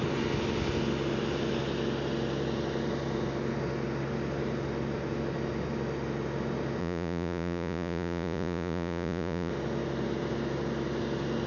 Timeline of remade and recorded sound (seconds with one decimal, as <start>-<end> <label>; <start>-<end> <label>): 0.0-6.8 recorded; 6.8-9.5 remade; 9.5-11.5 recorded